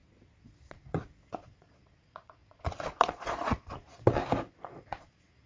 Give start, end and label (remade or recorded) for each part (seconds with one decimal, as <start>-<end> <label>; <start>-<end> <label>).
0.0-4.2 remade; 4.2-4.8 recorded; 4.8-5.5 remade

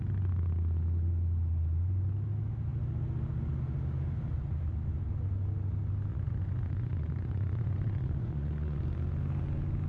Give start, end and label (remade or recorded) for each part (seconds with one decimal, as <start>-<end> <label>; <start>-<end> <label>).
0.0-6.1 recorded; 6.1-8.8 remade; 8.8-9.9 recorded